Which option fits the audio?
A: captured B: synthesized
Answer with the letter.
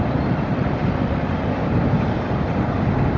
A